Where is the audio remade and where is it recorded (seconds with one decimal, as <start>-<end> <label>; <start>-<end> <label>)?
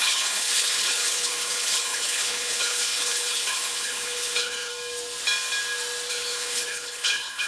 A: 0.0-4.7 remade; 4.7-6.1 recorded; 6.1-7.5 remade